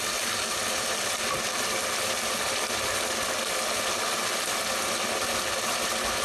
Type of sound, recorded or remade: recorded